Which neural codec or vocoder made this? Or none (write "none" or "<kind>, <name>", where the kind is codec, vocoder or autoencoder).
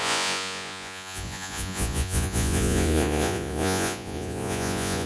vocoder, Vocos